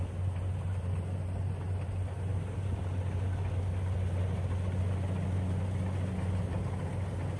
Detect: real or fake real